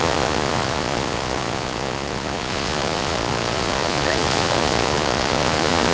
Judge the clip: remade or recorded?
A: remade